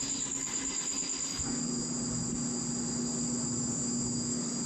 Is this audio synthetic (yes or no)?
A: no